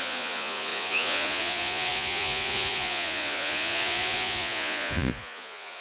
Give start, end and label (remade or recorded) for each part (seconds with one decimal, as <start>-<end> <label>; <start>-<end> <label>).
0.0-5.8 remade